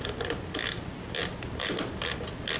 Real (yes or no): yes